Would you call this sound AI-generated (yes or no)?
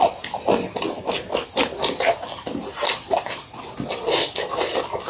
no